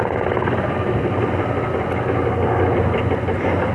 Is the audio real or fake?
real